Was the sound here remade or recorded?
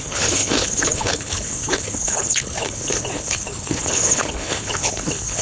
remade